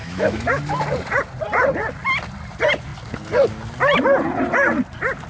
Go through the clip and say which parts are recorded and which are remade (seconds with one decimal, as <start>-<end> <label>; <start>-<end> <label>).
0.0-0.6 remade; 0.6-5.3 recorded